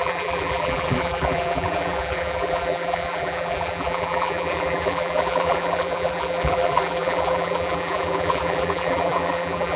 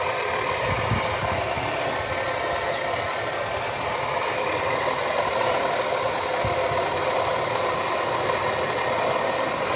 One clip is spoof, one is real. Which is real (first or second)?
second